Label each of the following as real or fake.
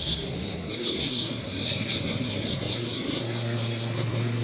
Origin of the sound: fake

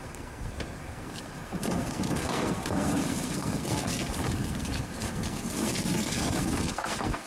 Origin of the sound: fake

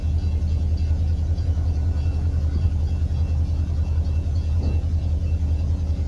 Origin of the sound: fake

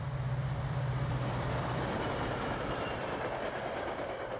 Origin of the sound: fake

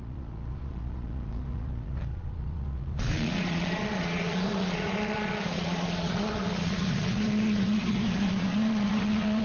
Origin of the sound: fake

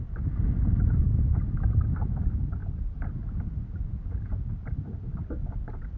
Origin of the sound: real